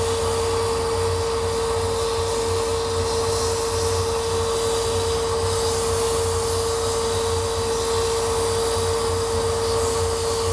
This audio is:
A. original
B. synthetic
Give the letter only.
A